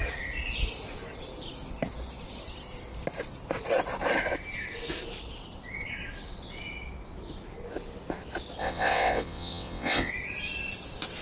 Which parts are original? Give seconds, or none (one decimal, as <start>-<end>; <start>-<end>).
0.0-8.6; 10.1-11.2